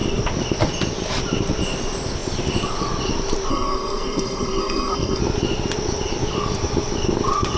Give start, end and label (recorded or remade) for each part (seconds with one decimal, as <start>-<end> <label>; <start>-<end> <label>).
0.0-3.5 recorded; 3.5-5.2 remade; 5.2-7.6 recorded